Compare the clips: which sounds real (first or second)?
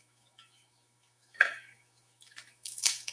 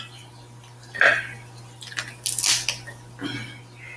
second